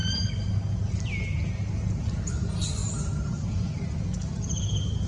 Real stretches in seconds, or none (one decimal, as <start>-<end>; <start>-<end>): 0.0-5.1